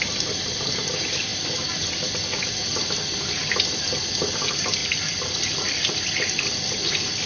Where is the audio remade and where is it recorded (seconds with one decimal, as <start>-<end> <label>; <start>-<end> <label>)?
0.0-4.8 recorded; 4.8-7.3 remade